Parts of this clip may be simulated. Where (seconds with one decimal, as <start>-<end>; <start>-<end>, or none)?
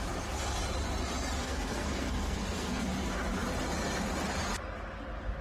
1.4-2.8